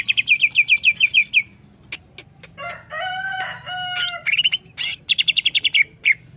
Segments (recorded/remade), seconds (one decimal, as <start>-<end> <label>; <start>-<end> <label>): 0.0-6.4 recorded